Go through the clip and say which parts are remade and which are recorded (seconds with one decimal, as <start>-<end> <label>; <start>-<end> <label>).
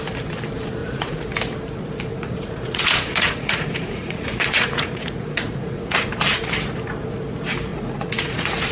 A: 0.0-0.8 recorded; 0.8-1.3 remade; 1.3-2.1 recorded; 2.1-6.0 remade; 6.0-7.7 recorded; 7.7-8.7 remade